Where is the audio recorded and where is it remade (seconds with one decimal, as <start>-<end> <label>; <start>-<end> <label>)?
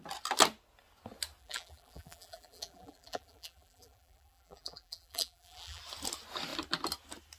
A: 0.0-1.4 recorded; 1.4-5.8 remade; 5.8-7.4 recorded